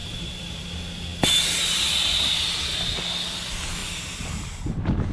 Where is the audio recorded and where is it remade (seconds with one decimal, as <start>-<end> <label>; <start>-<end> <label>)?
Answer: 0.0-0.6 remade; 0.6-3.8 recorded; 3.8-4.6 remade; 4.6-5.1 recorded